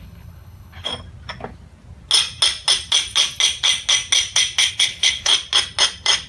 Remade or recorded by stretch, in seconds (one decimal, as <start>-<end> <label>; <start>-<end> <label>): 0.0-0.9 remade; 0.9-4.7 recorded; 4.7-5.3 remade; 5.3-6.3 recorded